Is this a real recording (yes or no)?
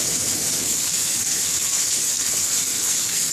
no